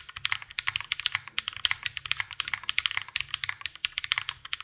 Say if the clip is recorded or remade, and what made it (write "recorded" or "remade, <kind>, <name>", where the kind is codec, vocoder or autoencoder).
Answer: recorded